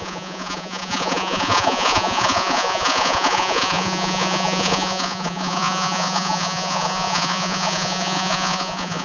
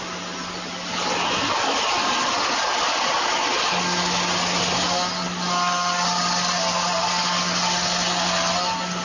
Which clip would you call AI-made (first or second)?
first